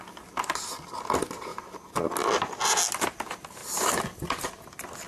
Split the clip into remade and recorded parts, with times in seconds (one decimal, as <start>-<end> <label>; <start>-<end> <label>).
0.0-5.1 recorded

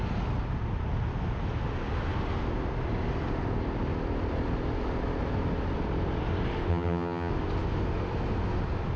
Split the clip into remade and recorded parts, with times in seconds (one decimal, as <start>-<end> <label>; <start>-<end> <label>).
0.0-6.7 recorded; 6.7-7.3 remade; 7.3-9.0 recorded

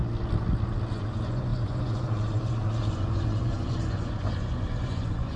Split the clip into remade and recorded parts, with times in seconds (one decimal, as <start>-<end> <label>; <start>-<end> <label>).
0.0-0.9 recorded; 0.9-5.4 remade

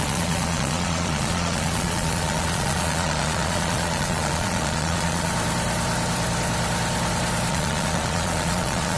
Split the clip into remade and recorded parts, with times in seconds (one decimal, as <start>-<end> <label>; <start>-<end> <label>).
0.0-5.3 remade; 5.3-7.5 recorded; 7.5-9.0 remade

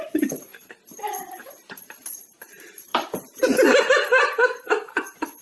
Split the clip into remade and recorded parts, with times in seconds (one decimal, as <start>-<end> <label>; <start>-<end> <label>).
0.0-0.5 remade; 0.5-1.3 recorded; 1.3-5.4 remade

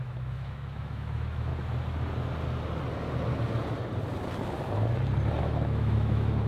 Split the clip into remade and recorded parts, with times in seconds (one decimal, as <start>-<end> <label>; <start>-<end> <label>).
0.0-1.5 remade; 1.5-5.4 recorded; 5.4-6.5 remade

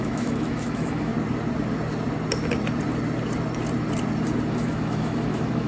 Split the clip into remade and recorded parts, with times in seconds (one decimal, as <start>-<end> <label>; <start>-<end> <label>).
0.0-1.1 remade; 1.1-4.5 recorded; 4.5-5.7 remade